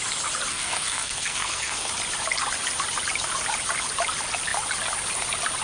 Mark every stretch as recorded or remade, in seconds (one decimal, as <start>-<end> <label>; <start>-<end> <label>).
0.0-0.5 recorded; 0.5-1.9 remade; 1.9-5.6 recorded